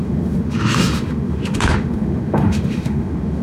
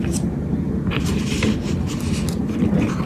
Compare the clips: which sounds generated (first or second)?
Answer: first